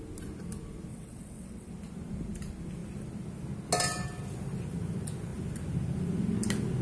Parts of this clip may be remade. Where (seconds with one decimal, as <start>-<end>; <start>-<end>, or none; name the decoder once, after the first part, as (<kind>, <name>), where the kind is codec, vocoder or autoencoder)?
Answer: 0.9-1.7 (vocoder, WaveNeXt)